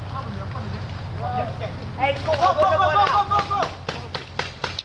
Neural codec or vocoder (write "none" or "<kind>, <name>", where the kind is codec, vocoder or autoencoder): none